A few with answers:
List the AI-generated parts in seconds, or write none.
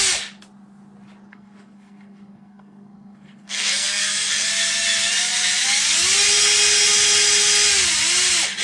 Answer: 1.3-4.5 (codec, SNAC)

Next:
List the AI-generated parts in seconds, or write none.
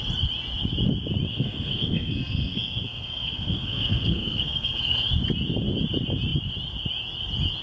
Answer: 1.3-5.0 (codec, SNAC)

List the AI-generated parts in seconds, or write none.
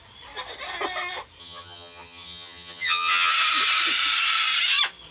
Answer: 1.4-3.3 (vocoder, HiFi-GAN)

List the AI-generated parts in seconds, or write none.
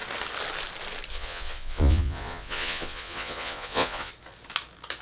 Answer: 1.1-4.1 (vocoder, Vocos)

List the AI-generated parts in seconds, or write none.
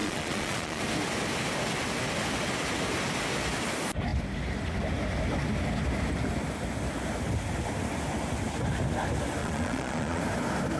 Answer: 0.0-0.8 (vocoder, Vocos); 9.4-10.2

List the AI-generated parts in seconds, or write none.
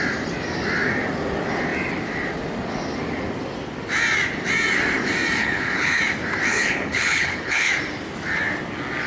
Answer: 5.4-6.0 (codec, HILCodec); 6.5-7.7